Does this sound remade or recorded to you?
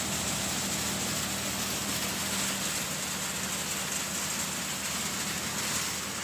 recorded